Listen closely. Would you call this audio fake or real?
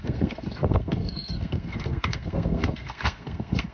fake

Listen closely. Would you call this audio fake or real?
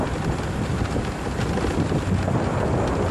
real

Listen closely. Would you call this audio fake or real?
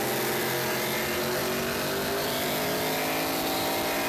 real